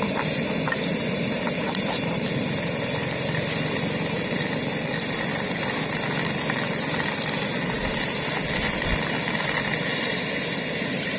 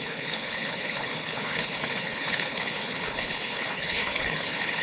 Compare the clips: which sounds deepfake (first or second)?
second